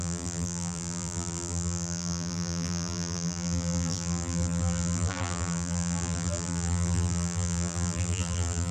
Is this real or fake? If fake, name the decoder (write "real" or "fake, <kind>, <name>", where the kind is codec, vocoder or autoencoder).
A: fake, vocoder, BigVGAN v2